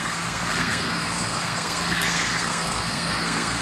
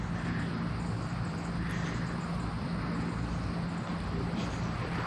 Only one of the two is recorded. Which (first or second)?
second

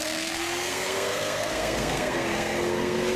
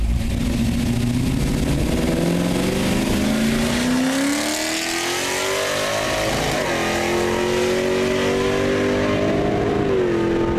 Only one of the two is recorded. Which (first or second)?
second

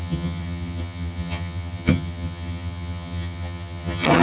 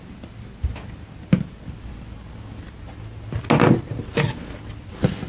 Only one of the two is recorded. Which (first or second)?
second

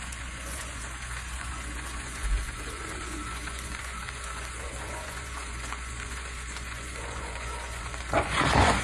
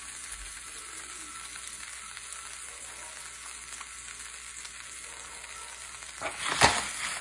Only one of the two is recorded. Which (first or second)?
second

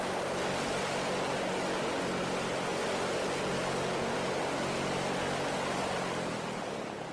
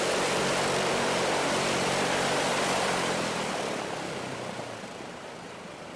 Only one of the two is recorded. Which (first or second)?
first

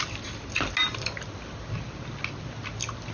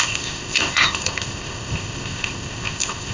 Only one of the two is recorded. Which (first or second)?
first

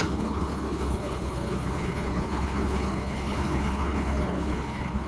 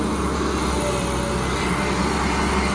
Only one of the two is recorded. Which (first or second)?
second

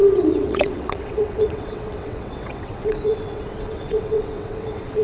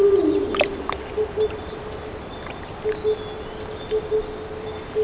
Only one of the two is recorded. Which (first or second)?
second